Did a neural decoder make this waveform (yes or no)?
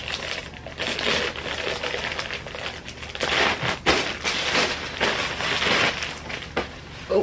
no